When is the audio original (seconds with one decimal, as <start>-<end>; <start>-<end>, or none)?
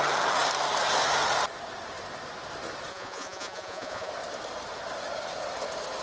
0.0-2.9; 4.1-6.0